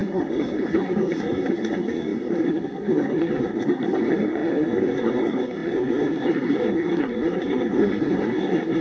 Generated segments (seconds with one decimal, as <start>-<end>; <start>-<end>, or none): 0.0-8.8